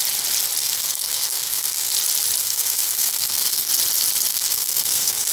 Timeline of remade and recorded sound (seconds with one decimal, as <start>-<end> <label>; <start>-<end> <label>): 0.0-0.6 recorded; 0.6-1.9 remade; 1.9-2.4 recorded; 2.4-3.7 remade; 3.7-4.3 recorded; 4.3-5.3 remade